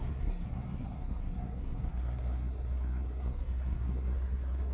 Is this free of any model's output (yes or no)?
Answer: no